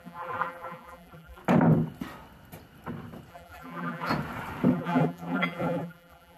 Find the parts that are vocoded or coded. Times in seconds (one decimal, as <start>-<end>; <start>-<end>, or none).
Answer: 0.0-1.4; 3.3-4.1; 4.7-6.4